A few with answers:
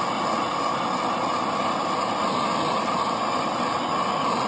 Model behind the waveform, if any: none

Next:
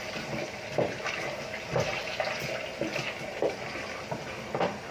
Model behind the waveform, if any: none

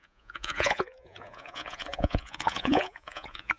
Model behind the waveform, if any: vocoder, Vocos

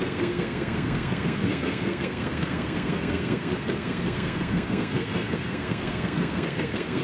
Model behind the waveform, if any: codec, SNAC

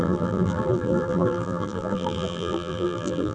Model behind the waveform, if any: vocoder, BigVGAN v2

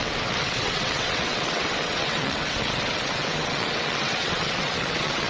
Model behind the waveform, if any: vocoder, WaveNeXt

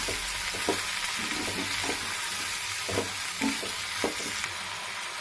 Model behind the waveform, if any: none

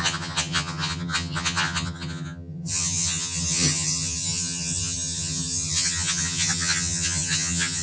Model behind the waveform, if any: vocoder, HiFi-GAN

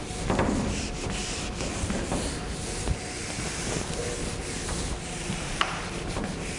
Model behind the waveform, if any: none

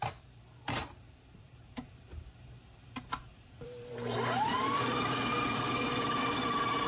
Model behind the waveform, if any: vocoder, BigVGAN v2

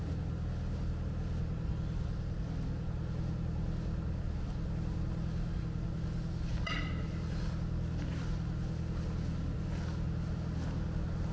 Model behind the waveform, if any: none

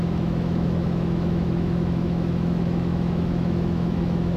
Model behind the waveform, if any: autoencoder, DAC-VAE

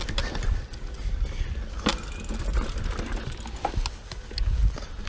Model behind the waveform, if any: none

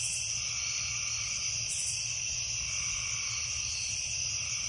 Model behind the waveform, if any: none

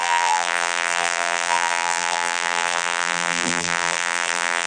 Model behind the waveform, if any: vocoder, BigVGAN v2